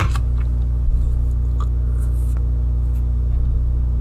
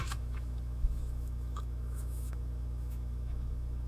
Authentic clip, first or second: first